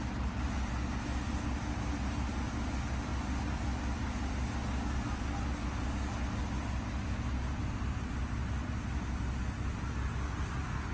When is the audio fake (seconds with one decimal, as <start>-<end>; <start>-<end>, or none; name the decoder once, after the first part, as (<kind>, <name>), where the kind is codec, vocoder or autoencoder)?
none